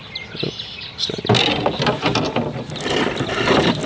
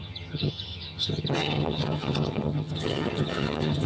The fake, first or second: second